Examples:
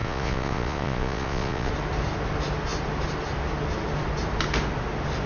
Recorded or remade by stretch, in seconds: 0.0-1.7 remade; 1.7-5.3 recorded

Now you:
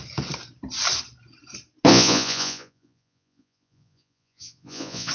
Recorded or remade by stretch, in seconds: 0.0-1.9 recorded; 1.9-5.1 remade

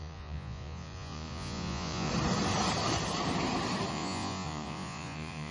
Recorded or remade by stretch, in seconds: 0.0-2.1 remade; 2.1-3.9 recorded; 3.9-5.5 remade

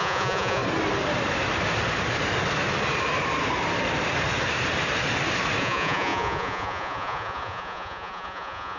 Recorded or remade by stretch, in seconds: 0.0-0.6 remade; 0.6-5.6 recorded; 5.6-8.8 remade

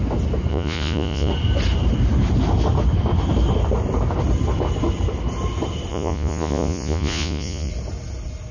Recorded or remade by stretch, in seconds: 0.0-0.5 recorded; 0.5-1.3 remade; 1.3-5.9 recorded; 5.9-7.7 remade; 7.7-8.5 recorded

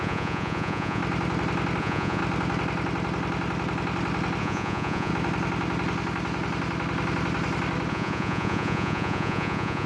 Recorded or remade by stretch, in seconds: 0.0-1.0 remade; 1.0-1.8 recorded; 1.8-2.2 remade; 2.2-4.4 recorded; 4.4-5.1 remade; 5.1-7.9 recorded; 7.9-9.9 remade

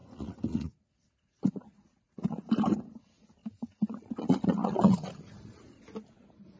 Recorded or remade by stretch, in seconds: 0.0-2.5 remade; 2.5-3.4 recorded; 3.4-5.8 remade; 5.8-6.6 recorded

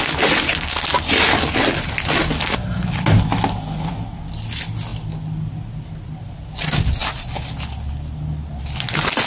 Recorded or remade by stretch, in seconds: 0.0-9.3 recorded